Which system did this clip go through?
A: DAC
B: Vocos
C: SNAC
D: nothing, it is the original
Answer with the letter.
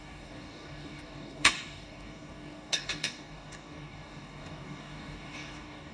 A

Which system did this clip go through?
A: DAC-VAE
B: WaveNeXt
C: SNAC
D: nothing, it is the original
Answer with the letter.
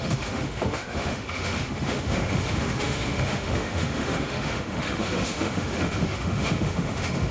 A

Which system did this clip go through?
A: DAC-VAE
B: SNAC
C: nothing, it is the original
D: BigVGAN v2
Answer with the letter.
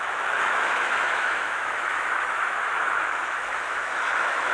A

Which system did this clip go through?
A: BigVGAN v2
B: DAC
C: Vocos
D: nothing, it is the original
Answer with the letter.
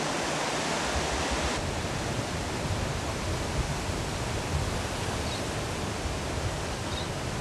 D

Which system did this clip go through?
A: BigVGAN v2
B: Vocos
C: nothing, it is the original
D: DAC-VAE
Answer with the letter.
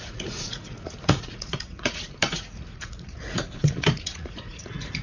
B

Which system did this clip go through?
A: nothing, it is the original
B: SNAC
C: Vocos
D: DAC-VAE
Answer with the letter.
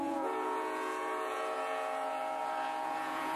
C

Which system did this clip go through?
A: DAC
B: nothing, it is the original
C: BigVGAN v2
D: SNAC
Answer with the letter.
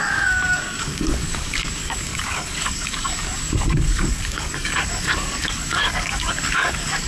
A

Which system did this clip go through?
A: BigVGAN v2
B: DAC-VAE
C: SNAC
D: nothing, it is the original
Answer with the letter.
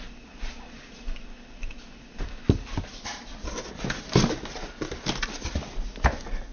D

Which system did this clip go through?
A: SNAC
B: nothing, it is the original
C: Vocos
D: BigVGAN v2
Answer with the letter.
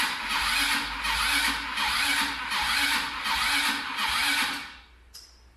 B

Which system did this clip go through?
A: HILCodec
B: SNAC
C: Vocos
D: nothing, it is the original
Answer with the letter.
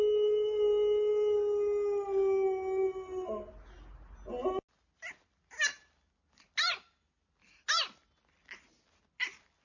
D